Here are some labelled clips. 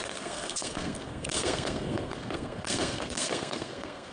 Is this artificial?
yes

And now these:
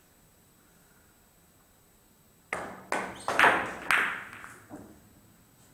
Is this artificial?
no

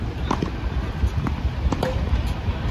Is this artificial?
no